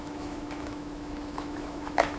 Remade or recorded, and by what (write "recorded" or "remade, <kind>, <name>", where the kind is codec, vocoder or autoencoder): remade, autoencoder, DAC-VAE